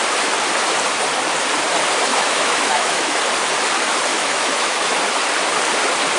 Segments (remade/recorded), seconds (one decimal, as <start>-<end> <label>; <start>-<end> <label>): 0.0-2.1 recorded; 2.1-3.2 remade; 3.2-4.1 recorded; 4.1-4.9 remade; 4.9-6.2 recorded